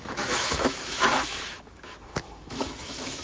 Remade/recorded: remade